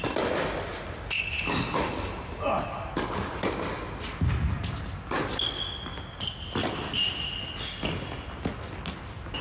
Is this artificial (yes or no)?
no